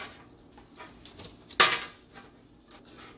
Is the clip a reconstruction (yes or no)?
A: no